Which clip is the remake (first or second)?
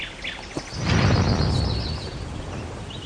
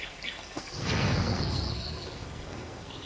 second